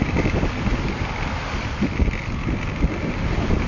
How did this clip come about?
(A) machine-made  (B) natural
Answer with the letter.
B